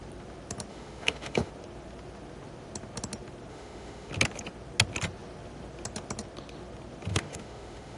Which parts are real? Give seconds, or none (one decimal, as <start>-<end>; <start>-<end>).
0.0-0.7; 1.5-3.5; 4.1-7.1